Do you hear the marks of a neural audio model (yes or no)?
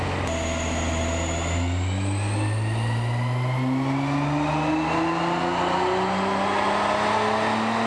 no